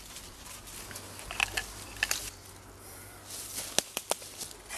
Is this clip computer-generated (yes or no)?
no